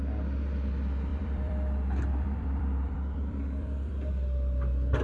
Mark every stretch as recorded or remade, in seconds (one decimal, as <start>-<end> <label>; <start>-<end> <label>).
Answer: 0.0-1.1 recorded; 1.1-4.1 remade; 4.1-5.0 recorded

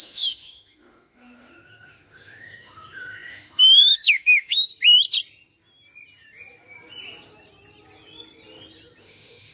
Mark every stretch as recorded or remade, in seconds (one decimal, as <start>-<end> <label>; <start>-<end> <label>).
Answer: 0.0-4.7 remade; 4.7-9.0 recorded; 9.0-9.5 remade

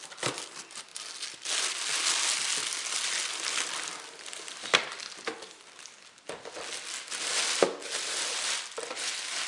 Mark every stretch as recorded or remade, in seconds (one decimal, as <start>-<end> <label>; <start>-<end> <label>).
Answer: 0.0-9.5 recorded

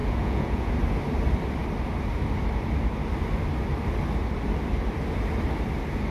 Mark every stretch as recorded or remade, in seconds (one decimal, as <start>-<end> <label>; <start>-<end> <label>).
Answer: 0.0-0.7 remade; 0.7-6.1 recorded

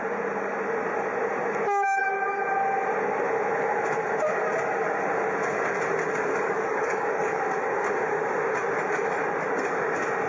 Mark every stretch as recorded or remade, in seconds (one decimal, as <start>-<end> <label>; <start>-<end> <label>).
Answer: 0.0-6.3 recorded; 6.3-7.4 remade; 7.4-10.3 recorded

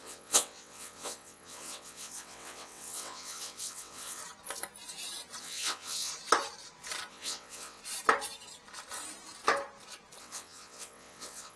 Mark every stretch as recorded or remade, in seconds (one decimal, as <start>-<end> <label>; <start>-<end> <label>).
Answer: 0.0-4.2 remade; 4.2-5.4 recorded; 5.4-6.1 remade; 6.1-7.1 recorded; 7.1-7.8 remade; 7.8-10.2 recorded; 10.2-11.6 remade